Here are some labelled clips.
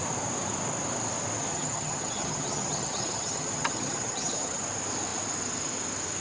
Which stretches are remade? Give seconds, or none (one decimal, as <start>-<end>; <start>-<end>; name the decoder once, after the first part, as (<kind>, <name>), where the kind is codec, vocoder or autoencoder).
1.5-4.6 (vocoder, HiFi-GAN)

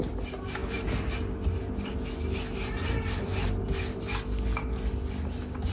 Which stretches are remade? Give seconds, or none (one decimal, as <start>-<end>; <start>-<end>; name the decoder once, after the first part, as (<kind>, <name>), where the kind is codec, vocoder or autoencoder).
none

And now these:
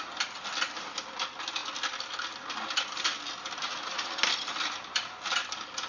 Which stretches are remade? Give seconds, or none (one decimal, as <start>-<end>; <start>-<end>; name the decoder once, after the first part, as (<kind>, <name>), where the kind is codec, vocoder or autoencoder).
none

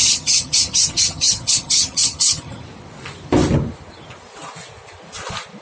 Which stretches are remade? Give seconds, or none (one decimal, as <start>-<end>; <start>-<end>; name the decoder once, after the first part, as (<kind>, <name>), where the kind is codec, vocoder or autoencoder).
0.0-2.6 (vocoder, HiFi-GAN)